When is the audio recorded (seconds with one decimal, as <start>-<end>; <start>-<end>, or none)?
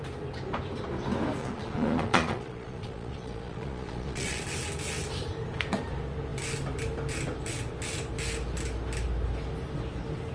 0.0-1.4; 4.4-10.3